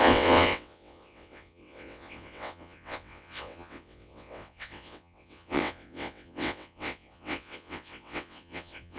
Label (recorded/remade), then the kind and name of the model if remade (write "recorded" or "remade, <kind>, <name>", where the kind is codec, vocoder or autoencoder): remade, vocoder, WaveNeXt